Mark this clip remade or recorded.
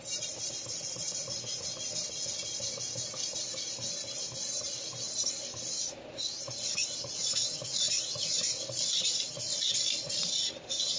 recorded